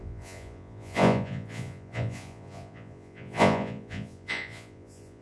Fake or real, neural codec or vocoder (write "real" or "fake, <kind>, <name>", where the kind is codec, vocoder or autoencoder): fake, vocoder, Vocos